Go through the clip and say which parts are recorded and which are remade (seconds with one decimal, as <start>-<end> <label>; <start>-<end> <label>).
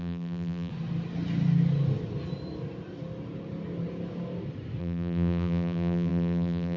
0.0-0.7 remade; 0.7-4.8 recorded; 4.8-6.8 remade